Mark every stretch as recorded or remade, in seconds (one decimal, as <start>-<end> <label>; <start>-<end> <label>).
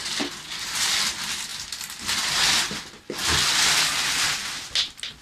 0.0-5.2 recorded